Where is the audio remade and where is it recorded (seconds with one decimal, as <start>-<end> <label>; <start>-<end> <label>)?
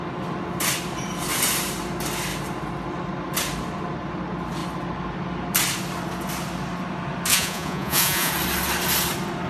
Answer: 0.0-7.3 recorded; 7.3-8.3 remade; 8.3-9.5 recorded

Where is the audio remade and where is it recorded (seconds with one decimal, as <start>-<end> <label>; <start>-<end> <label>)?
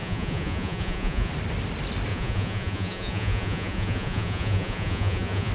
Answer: 0.0-1.3 remade; 1.3-2.1 recorded; 2.1-5.5 remade